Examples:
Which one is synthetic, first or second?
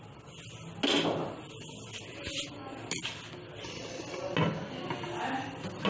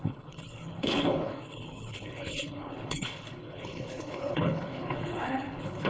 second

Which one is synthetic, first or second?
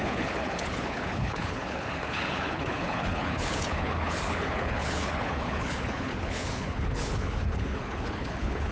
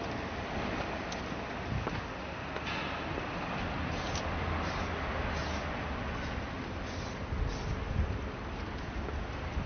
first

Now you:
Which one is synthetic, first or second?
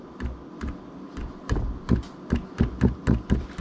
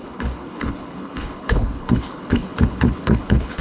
second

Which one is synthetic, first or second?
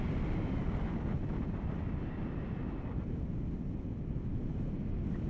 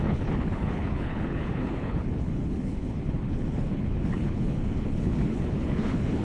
second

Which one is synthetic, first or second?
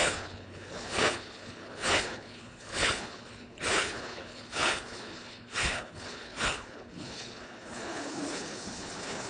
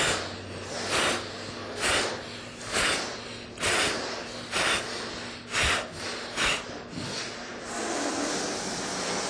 first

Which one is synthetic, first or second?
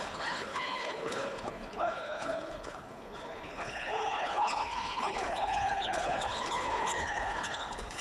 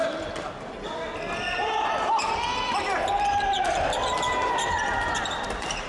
first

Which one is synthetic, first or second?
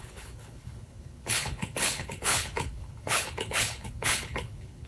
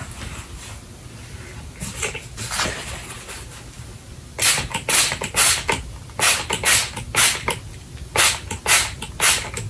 first